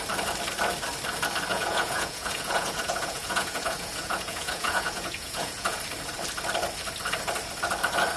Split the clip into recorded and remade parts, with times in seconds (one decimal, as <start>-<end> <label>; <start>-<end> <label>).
0.0-1.5 recorded; 1.5-5.8 remade; 5.8-8.2 recorded